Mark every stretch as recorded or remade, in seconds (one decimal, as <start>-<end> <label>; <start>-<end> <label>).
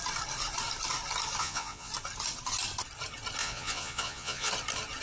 0.0-1.4 recorded; 1.4-1.9 remade; 1.9-3.4 recorded; 3.4-4.5 remade; 4.5-5.0 recorded